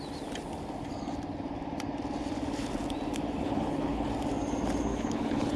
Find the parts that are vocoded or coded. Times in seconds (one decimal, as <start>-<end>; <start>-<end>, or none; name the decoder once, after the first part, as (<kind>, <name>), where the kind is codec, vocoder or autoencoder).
3.4-4.1 (codec, HILCodec); 4.9-5.6